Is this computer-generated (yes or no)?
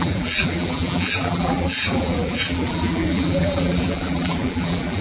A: yes